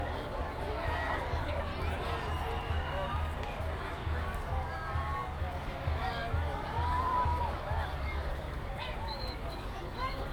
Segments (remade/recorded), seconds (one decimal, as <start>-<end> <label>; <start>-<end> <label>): 0.0-1.7 remade; 1.7-2.6 recorded; 2.6-10.3 remade